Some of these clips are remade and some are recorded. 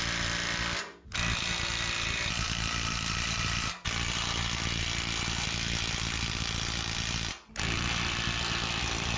recorded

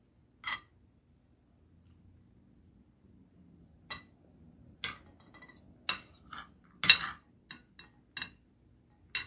recorded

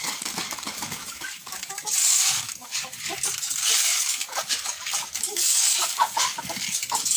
remade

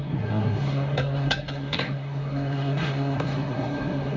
remade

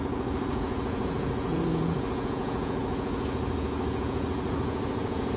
remade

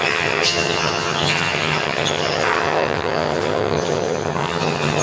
remade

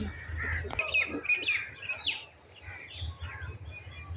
recorded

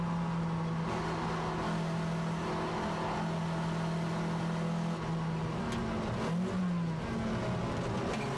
recorded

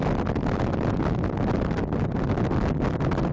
recorded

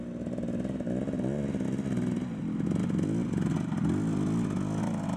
recorded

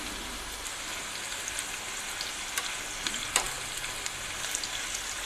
recorded